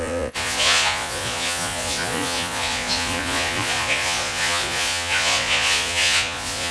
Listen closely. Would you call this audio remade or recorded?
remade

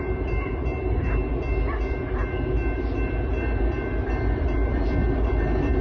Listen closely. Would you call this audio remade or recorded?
remade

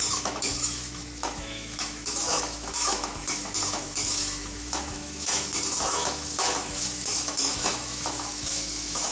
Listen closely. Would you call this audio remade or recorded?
remade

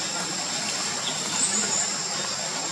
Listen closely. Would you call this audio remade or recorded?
recorded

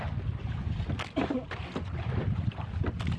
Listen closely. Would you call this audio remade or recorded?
recorded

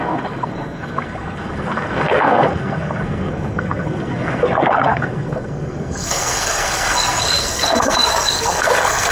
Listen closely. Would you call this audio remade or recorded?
remade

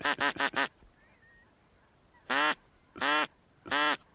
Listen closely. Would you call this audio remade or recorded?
recorded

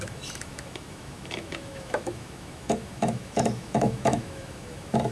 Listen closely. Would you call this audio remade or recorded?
remade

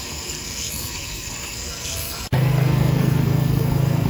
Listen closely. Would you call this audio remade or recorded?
remade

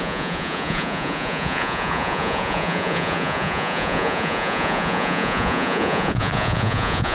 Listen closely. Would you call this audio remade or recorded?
remade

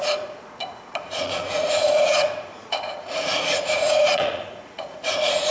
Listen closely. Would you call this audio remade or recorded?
remade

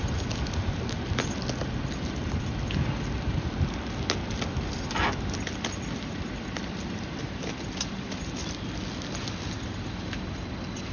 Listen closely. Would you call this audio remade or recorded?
recorded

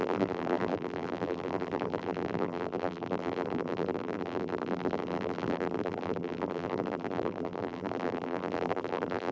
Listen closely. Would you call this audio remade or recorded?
remade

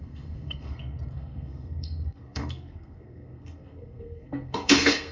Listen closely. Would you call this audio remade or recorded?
remade